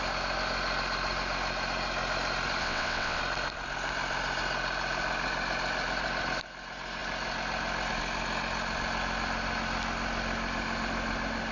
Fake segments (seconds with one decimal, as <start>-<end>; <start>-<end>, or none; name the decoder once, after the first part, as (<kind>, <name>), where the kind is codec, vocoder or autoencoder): 2.6-3.2 (vocoder, WaveNeXt)